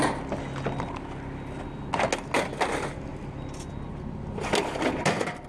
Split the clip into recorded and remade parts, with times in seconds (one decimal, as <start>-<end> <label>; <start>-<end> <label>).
0.0-5.5 recorded